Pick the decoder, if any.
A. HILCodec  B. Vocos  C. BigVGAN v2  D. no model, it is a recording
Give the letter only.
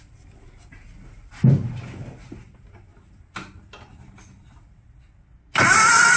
D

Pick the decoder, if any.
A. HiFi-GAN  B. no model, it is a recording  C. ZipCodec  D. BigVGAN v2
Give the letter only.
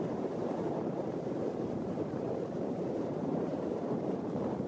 D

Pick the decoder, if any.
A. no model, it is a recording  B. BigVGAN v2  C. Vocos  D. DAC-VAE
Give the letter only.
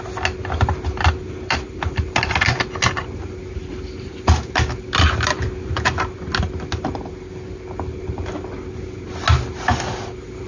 A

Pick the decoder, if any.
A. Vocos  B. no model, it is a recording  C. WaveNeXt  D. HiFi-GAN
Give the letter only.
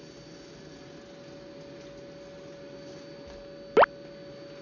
B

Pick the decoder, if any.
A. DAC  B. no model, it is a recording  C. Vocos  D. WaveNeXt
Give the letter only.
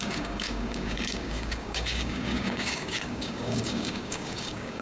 A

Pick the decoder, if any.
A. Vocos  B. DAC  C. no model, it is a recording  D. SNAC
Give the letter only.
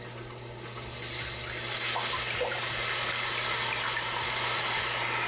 C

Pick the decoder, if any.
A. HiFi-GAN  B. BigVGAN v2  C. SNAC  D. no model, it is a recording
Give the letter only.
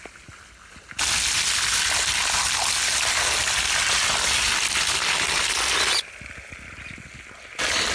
D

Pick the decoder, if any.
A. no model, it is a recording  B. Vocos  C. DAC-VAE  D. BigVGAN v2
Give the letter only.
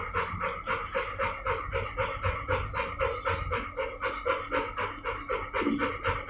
A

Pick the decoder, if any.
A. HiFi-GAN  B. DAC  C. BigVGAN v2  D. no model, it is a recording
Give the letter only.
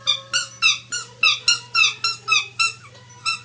D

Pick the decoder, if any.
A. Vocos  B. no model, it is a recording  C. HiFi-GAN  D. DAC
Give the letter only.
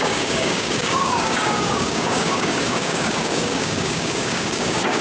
D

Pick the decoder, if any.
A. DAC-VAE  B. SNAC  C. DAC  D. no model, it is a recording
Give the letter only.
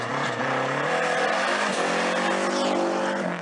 D